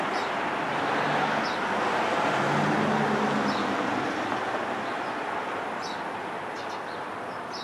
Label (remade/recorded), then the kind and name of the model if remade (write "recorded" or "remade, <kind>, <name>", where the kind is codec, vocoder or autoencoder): recorded